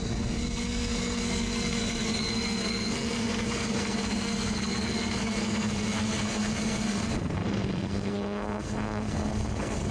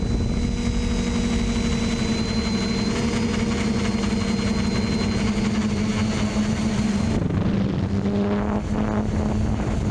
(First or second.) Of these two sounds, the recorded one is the second